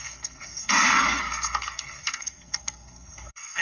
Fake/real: fake